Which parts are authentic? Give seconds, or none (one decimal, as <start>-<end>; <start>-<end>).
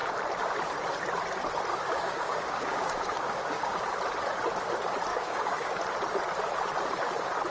0.0-1.7; 3.8-5.1; 5.8-7.5